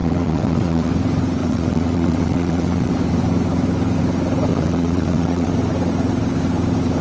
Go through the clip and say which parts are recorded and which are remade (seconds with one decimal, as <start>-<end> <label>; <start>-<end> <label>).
0.0-0.9 remade; 0.9-1.4 recorded; 1.4-2.9 remade; 2.9-4.5 recorded; 4.5-5.5 remade; 5.5-7.0 recorded